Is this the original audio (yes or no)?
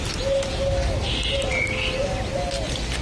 yes